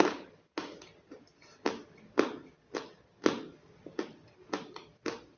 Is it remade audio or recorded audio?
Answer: recorded